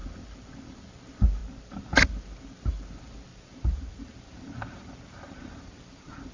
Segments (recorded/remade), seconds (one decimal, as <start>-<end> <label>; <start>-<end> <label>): 0.0-3.3 recorded; 3.3-6.3 remade